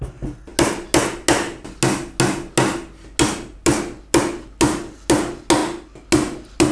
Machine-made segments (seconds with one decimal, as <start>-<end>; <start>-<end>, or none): none